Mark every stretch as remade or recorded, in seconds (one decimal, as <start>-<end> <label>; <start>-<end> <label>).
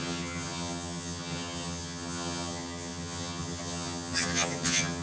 0.0-5.0 remade